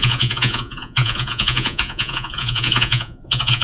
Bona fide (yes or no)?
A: no